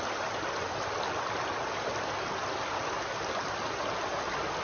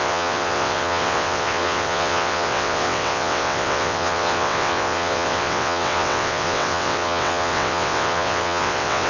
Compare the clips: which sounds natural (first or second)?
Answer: first